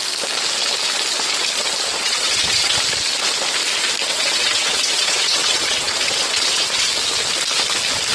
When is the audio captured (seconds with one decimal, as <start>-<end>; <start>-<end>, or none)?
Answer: 0.0-2.0; 2.8-4.1; 6.9-8.1